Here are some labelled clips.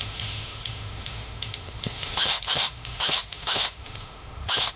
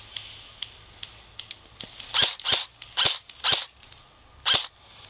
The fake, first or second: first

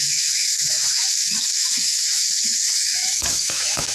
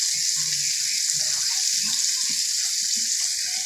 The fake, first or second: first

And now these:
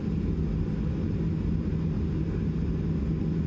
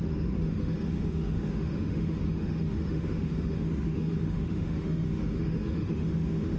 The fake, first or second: second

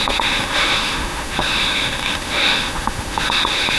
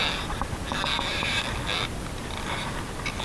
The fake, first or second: first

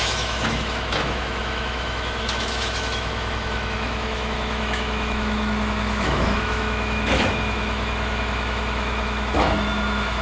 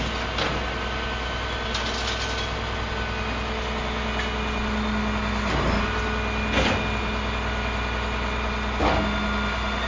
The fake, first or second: first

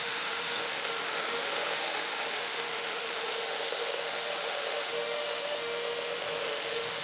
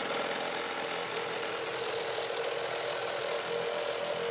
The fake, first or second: first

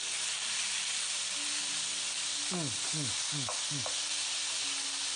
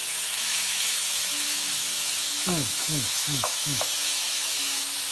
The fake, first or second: second